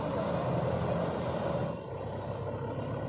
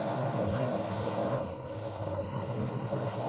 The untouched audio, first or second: first